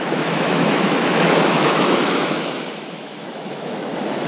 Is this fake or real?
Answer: fake